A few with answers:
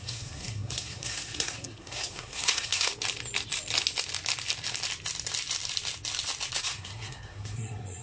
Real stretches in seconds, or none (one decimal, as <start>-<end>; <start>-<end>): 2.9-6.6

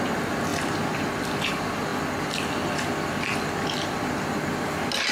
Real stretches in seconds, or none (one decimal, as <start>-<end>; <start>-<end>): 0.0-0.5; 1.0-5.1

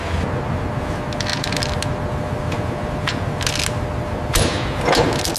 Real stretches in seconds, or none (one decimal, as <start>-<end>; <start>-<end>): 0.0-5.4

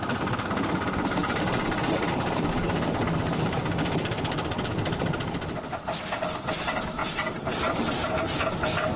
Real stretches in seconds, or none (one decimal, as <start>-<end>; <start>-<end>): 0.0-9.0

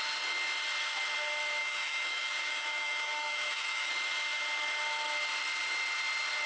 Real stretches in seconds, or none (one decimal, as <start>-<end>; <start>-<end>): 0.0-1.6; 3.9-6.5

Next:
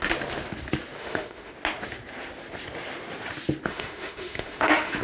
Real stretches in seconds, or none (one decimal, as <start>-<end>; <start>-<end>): 0.0-1.0; 1.5-3.7

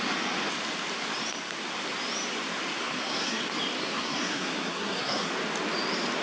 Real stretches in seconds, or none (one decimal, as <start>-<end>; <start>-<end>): 0.0-2.8; 3.4-3.8; 5.3-6.2

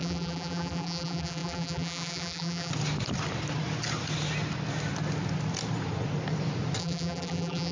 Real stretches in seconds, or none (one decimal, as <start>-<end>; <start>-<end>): 2.7-6.8